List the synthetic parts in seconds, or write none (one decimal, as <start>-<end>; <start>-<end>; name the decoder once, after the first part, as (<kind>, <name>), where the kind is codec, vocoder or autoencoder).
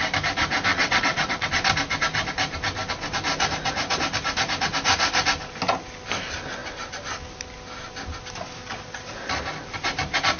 0.7-1.5 (vocoder, WaveNeXt)